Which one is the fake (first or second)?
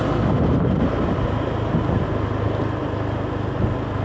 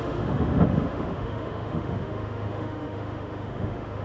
second